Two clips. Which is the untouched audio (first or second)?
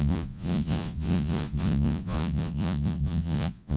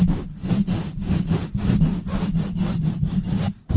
second